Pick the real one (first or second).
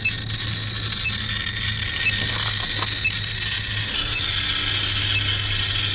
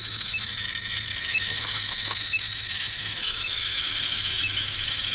first